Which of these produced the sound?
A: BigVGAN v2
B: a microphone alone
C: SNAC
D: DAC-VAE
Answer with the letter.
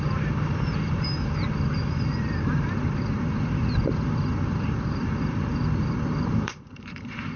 A